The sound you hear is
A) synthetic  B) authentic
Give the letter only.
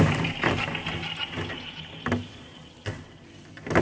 B